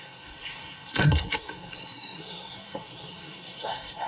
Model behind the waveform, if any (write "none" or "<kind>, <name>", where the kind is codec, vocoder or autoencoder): codec, SNAC